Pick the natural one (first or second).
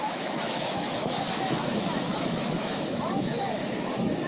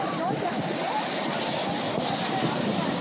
second